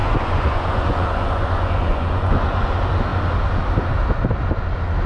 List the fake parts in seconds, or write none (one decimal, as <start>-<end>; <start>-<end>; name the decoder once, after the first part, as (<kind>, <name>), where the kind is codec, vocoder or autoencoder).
0.0-2.7 (vocoder, Vocos)